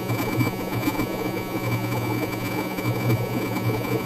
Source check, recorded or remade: remade